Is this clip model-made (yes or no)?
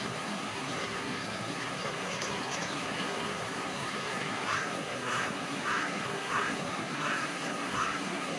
yes